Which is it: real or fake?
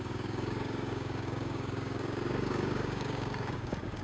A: fake